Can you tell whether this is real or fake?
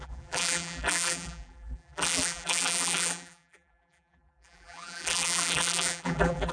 fake